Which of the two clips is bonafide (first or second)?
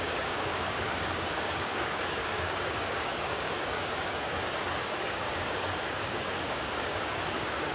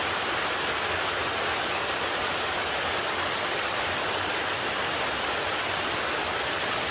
second